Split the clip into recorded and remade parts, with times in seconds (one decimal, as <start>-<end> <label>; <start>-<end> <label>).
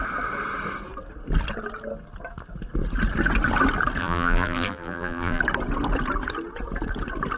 0.0-4.0 recorded; 4.0-5.4 remade; 5.4-7.4 recorded